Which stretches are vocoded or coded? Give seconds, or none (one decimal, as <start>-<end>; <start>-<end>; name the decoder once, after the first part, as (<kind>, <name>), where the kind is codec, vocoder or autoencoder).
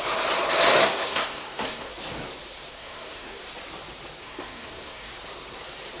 0.8-1.9 (codec, SNAC); 2.7-3.4; 4.2-5.1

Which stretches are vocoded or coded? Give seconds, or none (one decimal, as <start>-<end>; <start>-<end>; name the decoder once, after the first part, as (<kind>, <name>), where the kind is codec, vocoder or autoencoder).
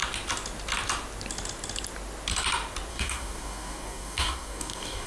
2.9-5.1 (codec, DAC)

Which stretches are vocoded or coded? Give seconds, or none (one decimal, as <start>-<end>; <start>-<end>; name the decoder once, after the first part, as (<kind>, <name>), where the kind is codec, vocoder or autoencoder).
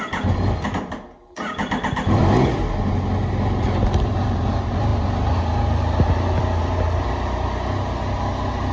none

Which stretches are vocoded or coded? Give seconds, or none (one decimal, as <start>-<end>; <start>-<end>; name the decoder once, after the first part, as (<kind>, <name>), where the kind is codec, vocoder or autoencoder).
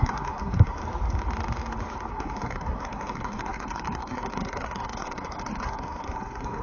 0.0-0.8 (codec, SNAC); 2.1-6.6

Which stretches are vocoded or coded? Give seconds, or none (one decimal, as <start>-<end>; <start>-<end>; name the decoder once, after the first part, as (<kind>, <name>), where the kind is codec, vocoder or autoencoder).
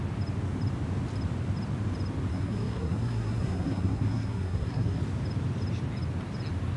2.3-5.0 (codec, SNAC)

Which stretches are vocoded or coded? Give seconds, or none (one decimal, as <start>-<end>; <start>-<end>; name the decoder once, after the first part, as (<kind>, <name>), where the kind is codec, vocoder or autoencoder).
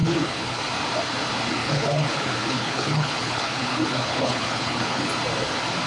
0.0-0.6 (codec, HILCodec); 1.6-5.1